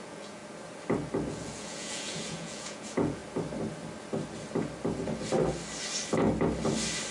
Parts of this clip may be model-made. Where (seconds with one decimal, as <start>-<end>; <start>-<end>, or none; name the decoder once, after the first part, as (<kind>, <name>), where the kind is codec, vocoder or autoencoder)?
0.0-0.4 (vocoder, Vocos); 1.3-3.2

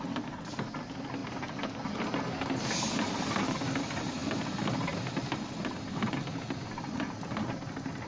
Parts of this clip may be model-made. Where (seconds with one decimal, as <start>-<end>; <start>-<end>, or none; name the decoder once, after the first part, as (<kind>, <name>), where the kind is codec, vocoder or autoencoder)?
none

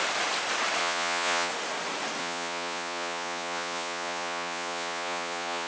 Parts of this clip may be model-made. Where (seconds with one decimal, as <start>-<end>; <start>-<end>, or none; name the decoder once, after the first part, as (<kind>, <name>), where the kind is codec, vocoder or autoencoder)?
0.8-1.5 (vocoder, Vocos); 2.2-5.7